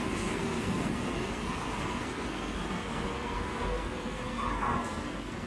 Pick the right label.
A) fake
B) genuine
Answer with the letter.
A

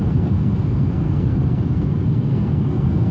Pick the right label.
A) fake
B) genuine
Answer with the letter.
A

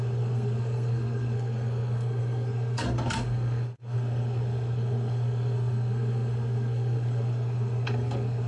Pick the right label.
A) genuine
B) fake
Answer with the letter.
B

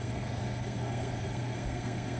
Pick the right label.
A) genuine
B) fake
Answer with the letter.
B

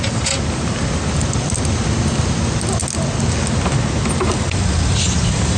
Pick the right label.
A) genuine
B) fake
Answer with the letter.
A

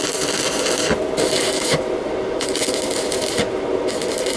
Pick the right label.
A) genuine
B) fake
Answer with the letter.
A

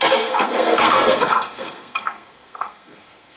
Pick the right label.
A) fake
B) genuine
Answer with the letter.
A